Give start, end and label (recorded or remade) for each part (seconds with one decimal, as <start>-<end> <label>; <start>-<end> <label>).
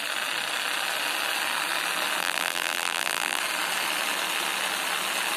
0.0-2.2 recorded; 2.2-3.4 remade; 3.4-5.4 recorded